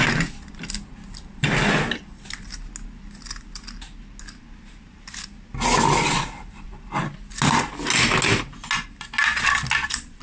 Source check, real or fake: real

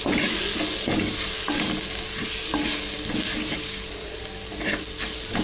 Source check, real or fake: real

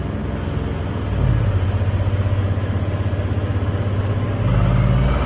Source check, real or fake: real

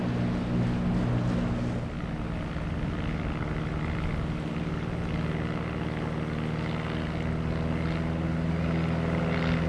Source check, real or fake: real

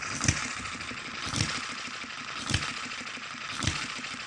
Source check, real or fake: real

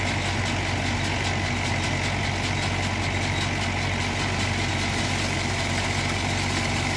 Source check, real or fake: real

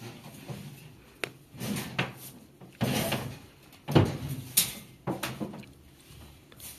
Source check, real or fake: real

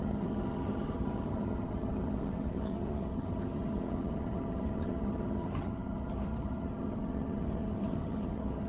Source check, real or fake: fake